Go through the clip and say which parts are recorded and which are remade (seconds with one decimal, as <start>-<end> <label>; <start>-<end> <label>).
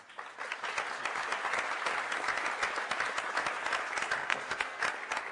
0.0-4.2 recorded; 4.2-4.8 remade; 4.8-5.3 recorded